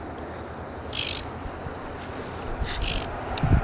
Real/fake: real